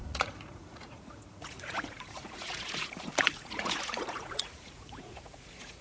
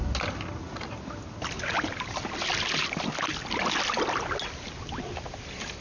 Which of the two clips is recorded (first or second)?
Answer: second